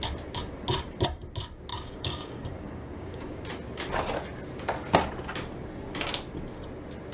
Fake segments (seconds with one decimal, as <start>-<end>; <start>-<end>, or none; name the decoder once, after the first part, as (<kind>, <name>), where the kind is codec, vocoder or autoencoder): 1.7-3.4 (codec, DAC)